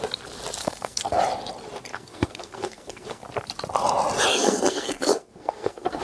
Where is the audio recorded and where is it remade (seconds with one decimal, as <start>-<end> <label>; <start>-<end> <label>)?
0.0-0.6 recorded; 0.6-1.2 remade; 1.2-1.9 recorded; 1.9-3.2 remade; 3.2-4.3 recorded; 4.3-6.0 remade

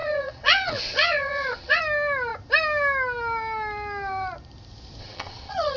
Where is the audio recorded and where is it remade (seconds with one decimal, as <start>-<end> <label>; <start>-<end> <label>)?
0.0-1.8 remade; 1.8-5.0 recorded; 5.0-5.8 remade

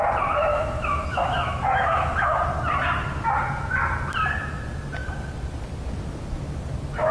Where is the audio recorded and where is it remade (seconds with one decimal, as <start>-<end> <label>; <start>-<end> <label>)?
0.0-0.5 recorded; 0.5-2.4 remade; 2.4-7.1 recorded

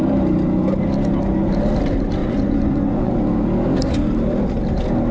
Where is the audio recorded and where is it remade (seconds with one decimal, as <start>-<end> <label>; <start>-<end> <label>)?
0.0-2.2 recorded; 2.2-3.1 remade; 3.1-5.1 recorded

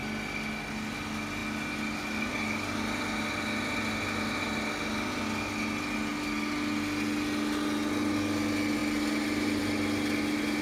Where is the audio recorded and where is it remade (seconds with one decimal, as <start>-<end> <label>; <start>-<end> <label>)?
0.0-10.6 recorded

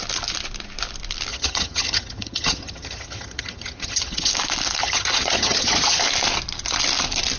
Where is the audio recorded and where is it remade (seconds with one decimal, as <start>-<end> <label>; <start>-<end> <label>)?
0.0-1.3 recorded; 1.3-4.3 remade; 4.3-4.8 recorded; 4.8-6.0 remade; 6.0-7.4 recorded

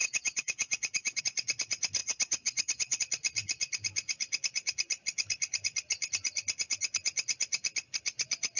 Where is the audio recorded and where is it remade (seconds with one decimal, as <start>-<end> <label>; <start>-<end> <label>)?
0.0-1.2 remade; 1.2-2.0 recorded; 2.0-3.0 remade; 3.0-8.6 recorded

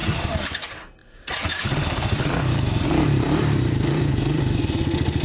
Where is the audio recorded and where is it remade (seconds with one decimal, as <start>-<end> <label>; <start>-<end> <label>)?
0.0-0.6 remade; 0.6-1.0 recorded; 1.0-4.1 remade; 4.1-5.2 recorded